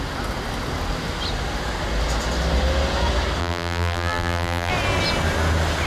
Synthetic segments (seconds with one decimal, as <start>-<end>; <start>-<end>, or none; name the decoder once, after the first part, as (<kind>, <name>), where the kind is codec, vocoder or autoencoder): 3.4-4.7 (vocoder, BigVGAN v2)

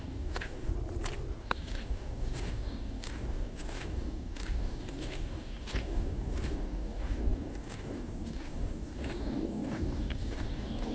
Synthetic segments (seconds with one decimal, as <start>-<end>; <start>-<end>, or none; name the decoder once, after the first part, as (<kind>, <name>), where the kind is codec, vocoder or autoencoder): 0.0-0.7 (codec, DAC); 1.4-10.9

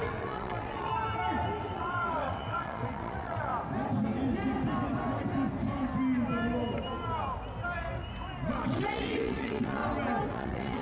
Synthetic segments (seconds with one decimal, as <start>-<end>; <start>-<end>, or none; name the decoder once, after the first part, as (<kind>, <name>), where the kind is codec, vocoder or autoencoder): 0.0-0.9 (vocoder, WaveNeXt); 1.6-3.5; 8.5-9.8; 10.3-10.8